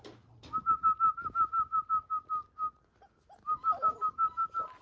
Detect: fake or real real